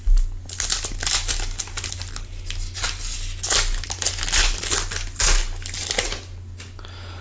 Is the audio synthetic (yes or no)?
no